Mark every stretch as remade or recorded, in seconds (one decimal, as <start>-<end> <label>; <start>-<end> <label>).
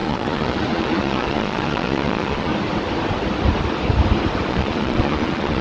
0.0-2.5 remade; 2.5-4.5 recorded; 4.5-5.6 remade